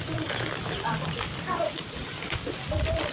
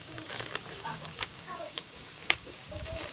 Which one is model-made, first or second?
second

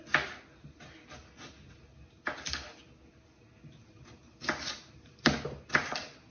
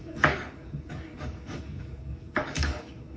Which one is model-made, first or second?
second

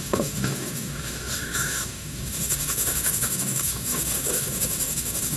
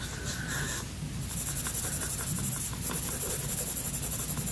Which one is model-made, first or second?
first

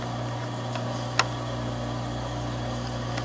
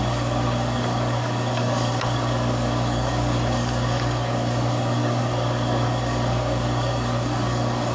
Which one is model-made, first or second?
second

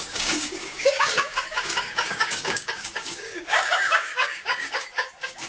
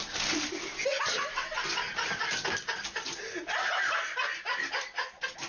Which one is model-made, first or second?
first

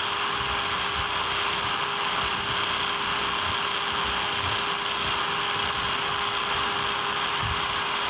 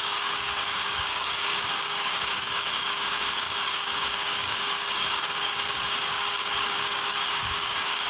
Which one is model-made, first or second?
second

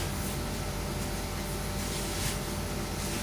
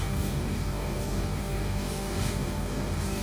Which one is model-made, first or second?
second